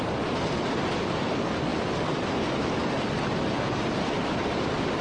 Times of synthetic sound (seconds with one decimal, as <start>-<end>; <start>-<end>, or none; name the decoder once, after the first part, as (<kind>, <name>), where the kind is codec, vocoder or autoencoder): none